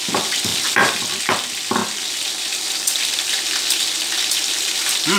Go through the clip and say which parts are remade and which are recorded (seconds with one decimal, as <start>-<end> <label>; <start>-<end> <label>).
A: 0.0-5.2 recorded